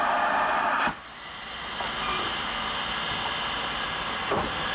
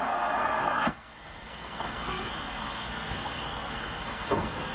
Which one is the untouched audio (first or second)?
first